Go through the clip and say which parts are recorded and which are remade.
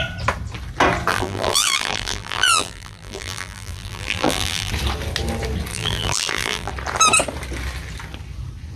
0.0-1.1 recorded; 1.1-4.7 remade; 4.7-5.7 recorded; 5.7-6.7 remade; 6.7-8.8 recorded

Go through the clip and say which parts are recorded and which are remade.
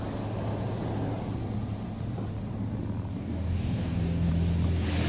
0.0-3.1 recorded; 3.1-4.3 remade; 4.3-5.1 recorded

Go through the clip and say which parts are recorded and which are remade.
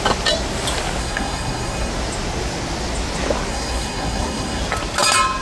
0.0-1.0 recorded; 1.0-1.9 remade; 1.9-3.5 recorded; 3.5-4.6 remade; 4.6-5.4 recorded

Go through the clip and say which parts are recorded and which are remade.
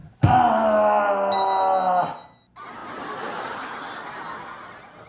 0.0-5.1 recorded